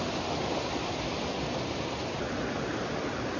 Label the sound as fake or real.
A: real